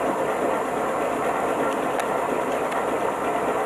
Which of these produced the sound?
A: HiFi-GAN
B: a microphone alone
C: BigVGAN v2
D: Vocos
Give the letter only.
B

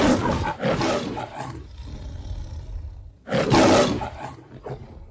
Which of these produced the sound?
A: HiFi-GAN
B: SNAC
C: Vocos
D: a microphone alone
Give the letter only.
D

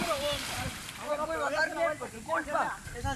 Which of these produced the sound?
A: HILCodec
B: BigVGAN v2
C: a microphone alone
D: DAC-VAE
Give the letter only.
C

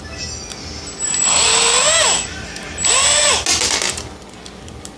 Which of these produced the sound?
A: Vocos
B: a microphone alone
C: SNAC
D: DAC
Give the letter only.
B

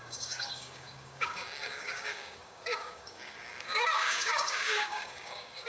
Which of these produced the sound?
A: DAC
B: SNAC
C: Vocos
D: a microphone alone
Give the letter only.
A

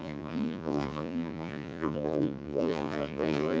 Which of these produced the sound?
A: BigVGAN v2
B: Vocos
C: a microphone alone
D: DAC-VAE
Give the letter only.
B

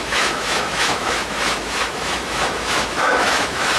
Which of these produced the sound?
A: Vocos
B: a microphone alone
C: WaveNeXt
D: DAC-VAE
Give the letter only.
D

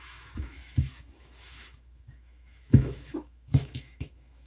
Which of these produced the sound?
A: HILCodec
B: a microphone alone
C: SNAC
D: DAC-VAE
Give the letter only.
D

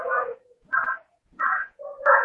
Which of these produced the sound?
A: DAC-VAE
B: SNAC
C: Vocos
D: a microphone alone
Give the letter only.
C